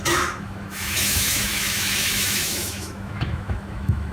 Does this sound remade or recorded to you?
remade